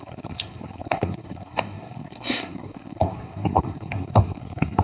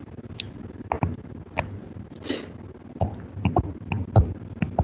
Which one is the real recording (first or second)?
second